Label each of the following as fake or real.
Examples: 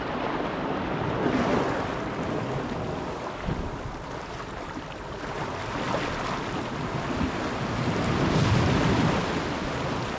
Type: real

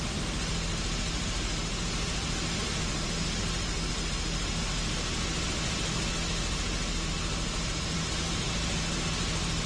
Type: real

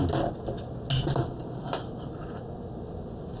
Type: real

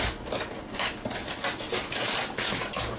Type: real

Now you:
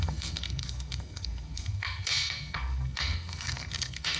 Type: fake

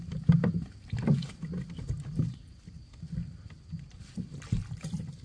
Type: real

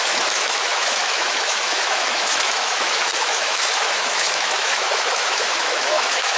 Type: fake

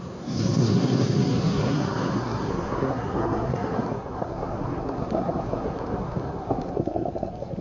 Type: fake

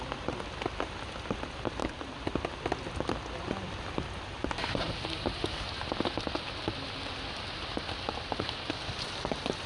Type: real